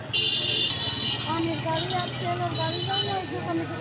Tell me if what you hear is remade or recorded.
recorded